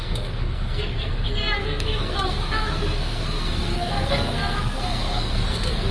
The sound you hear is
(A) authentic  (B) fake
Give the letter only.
B